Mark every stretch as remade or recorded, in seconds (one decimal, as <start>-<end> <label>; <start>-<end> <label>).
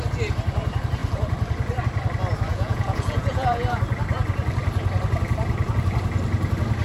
0.0-2.5 recorded; 2.5-3.8 remade; 3.8-6.8 recorded